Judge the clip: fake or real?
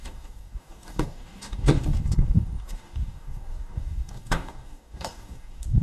fake